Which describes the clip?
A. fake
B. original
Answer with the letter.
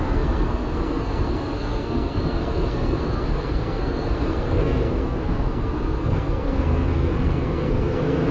A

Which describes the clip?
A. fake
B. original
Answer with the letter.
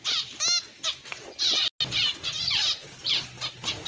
B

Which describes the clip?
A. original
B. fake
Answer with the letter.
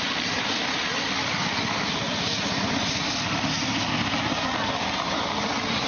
A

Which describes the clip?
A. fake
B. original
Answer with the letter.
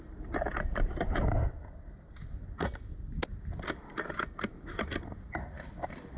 B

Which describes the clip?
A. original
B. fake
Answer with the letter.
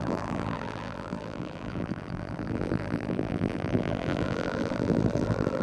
B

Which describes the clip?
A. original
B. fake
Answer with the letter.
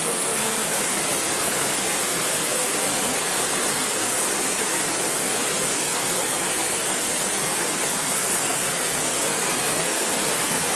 B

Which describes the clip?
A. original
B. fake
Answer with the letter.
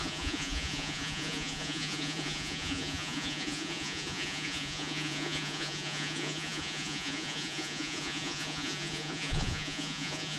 B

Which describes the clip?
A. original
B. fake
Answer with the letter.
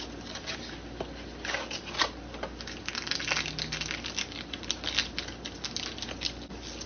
A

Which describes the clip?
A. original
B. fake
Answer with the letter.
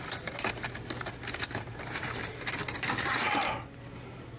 B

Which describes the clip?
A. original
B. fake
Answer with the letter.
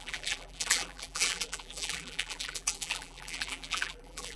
B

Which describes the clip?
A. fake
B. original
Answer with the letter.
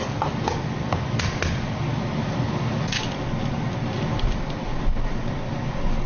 B